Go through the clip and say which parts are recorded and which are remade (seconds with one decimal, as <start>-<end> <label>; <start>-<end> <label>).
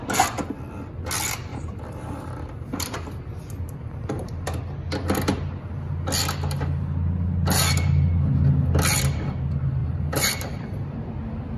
0.0-1.5 recorded; 1.5-4.6 remade; 4.6-9.8 recorded; 9.8-11.1 remade; 11.1-11.6 recorded